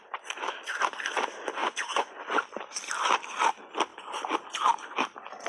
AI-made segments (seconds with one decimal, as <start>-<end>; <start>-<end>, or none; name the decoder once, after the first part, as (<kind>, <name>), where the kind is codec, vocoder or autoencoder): 1.6-2.2 (vocoder, Vocos)